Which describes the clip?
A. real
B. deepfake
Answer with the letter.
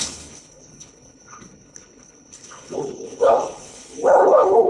B